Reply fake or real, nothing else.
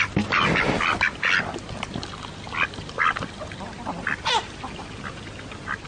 real